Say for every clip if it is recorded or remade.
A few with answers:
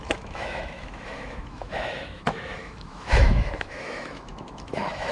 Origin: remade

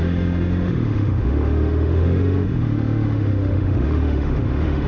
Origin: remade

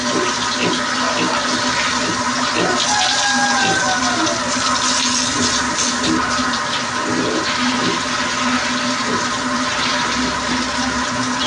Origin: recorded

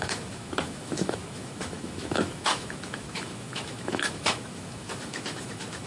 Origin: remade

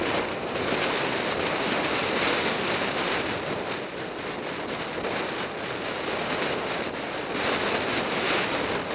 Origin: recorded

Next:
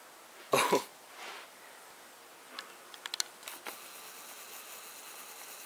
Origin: recorded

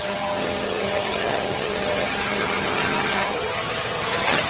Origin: remade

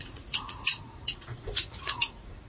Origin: remade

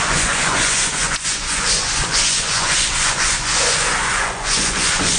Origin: remade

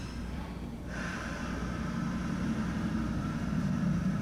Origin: remade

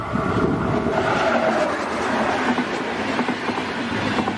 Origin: recorded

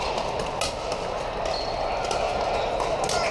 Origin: recorded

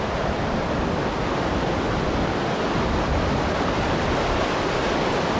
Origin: recorded